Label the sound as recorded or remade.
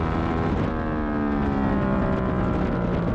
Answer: recorded